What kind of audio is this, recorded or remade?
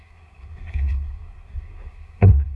remade